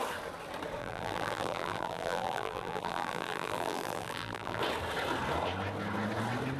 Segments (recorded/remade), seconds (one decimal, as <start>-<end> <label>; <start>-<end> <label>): 0.0-0.8 recorded; 0.8-4.6 remade; 4.6-6.6 recorded